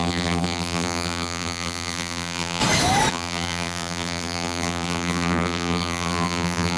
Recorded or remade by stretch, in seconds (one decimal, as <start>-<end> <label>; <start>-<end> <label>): 0.0-2.6 remade; 2.6-3.1 recorded; 3.1-6.8 remade